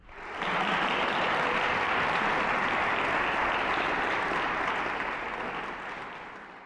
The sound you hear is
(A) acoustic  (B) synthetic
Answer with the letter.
A